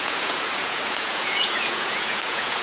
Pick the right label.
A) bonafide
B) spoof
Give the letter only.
B